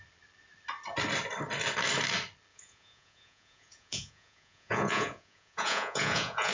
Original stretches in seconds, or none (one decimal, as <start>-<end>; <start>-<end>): 0.0-2.5